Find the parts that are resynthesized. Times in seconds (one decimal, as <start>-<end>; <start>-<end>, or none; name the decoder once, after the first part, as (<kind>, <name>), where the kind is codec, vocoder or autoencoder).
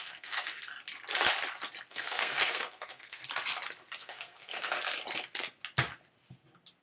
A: 0.0-0.7 (codec, SNAC); 1.9-3.2; 4.0-4.8